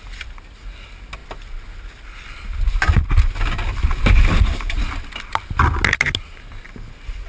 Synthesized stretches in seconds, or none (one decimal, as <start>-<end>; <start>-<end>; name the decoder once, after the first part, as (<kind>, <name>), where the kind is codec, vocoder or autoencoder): none